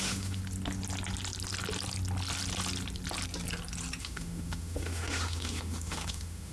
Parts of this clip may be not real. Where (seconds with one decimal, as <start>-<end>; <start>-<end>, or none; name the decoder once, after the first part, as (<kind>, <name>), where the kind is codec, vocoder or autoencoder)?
0.0-0.4 (autoencoder, DAC-VAE); 4.0-6.5